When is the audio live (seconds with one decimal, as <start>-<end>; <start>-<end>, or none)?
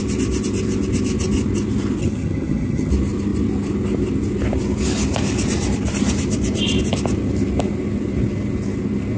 0.0-2.0; 2.9-9.2